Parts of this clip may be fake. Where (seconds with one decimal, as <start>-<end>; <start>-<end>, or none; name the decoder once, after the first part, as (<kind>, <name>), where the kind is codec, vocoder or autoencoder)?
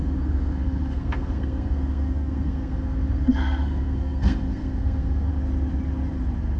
0.0-5.3 (codec, SNAC)